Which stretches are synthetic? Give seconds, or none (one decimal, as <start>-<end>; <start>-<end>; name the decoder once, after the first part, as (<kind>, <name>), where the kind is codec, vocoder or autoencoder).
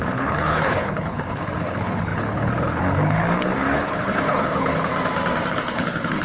0.0-4.9 (codec, HILCodec); 5.5-6.2